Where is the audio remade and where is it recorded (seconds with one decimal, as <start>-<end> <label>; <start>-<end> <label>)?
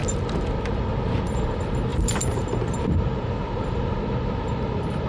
0.0-1.9 recorded; 1.9-4.0 remade; 4.0-5.1 recorded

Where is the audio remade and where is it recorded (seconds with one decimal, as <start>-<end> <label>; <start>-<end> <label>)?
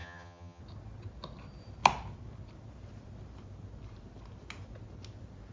0.0-0.6 remade; 0.6-5.5 recorded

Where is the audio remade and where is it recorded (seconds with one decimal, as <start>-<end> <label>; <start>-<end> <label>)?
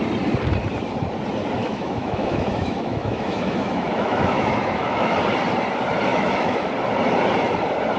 0.0-1.6 recorded; 1.6-5.1 remade; 5.1-6.1 recorded; 6.1-6.7 remade; 6.7-8.0 recorded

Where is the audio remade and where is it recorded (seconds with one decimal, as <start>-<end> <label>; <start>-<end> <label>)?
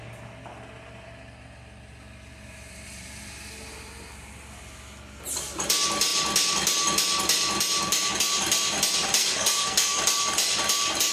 0.0-9.2 recorded; 9.2-10.0 remade; 10.0-11.1 recorded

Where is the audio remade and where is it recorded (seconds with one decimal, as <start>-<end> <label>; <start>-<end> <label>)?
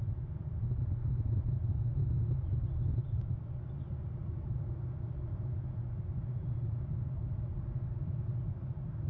0.0-9.1 recorded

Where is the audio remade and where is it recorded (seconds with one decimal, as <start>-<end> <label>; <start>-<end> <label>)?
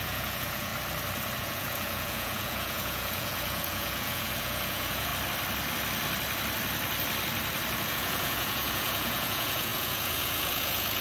0.0-0.7 remade; 0.7-1.4 recorded; 1.4-5.1 remade; 5.1-7.9 recorded; 7.9-11.0 remade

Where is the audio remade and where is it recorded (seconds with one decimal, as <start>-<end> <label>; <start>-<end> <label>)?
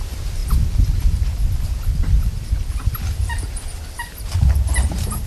0.0-0.4 remade; 0.4-3.1 recorded; 3.1-5.3 remade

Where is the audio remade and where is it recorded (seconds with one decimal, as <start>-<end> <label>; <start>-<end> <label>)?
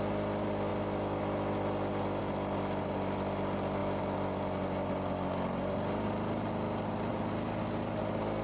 0.0-8.4 recorded